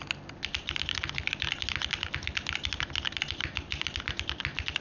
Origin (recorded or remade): recorded